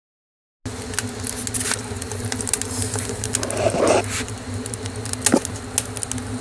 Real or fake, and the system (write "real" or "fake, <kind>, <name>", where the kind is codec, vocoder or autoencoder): real